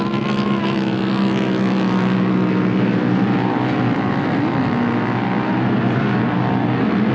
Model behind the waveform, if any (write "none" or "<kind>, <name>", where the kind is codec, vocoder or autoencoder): none